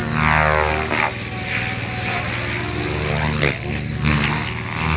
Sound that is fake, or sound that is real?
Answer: real